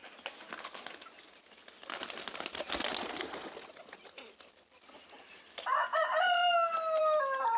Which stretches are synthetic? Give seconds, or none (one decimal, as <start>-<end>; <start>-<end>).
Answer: none